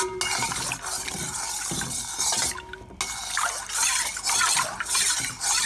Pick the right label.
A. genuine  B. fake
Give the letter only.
A